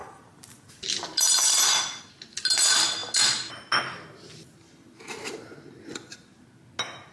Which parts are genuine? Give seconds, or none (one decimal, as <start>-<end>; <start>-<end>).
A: 2.0-7.1

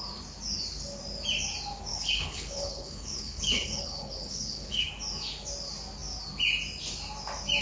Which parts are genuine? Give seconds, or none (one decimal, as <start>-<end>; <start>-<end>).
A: 0.0-1.9; 4.9-7.6